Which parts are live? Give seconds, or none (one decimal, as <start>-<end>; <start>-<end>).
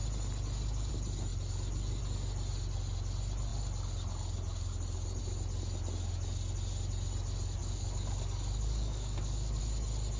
0.0-7.6; 9.6-10.2